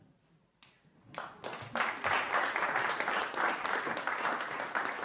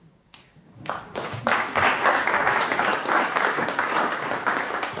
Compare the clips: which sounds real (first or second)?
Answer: first